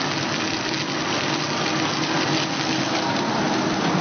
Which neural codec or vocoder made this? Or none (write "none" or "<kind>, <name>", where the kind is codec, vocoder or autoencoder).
none